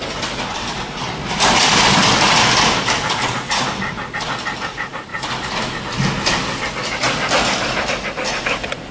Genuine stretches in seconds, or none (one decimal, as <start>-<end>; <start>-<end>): 0.0-8.9